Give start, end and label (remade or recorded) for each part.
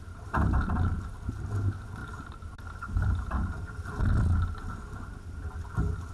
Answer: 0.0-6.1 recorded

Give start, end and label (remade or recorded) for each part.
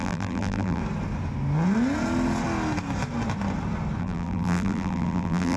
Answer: 0.0-0.8 remade; 0.8-4.0 recorded; 4.0-5.6 remade